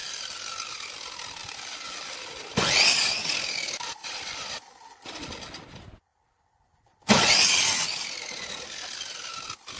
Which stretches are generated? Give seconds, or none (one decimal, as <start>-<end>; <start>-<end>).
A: 0.0-1.0; 1.4-2.4; 4.0-4.6; 6.1-7.8